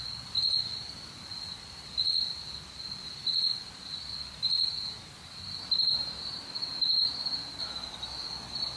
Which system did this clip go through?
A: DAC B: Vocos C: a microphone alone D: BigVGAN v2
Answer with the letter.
C